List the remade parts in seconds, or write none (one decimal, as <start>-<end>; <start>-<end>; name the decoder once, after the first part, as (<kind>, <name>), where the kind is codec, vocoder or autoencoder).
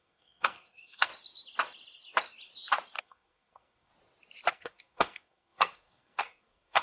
0.0-1.1 (codec, SNAC); 3.0-3.9; 4.5-6.8